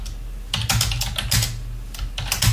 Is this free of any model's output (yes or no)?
yes